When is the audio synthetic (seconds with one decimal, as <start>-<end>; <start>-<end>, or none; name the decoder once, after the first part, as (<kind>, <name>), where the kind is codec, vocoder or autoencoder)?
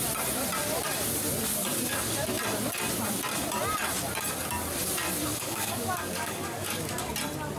5.3-7.1 (codec, DAC)